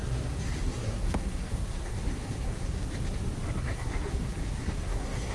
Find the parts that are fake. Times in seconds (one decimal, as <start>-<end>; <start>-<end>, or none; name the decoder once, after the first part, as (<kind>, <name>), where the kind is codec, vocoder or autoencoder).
0.0-2.8 (codec, SNAC); 3.6-5.3